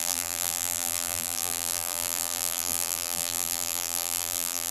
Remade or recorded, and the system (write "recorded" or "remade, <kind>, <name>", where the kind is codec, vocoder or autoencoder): remade, vocoder, BigVGAN v2